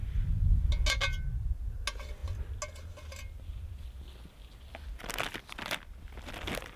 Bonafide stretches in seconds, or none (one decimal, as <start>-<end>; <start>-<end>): 0.0-6.8